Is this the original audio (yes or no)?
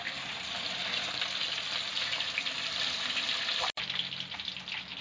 yes